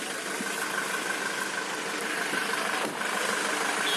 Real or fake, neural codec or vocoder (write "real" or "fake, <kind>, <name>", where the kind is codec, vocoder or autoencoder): real